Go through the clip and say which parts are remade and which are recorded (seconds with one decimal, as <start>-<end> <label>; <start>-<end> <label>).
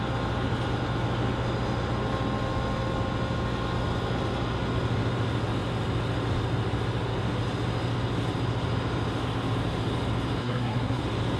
0.0-10.4 recorded; 10.4-11.0 remade; 11.0-11.4 recorded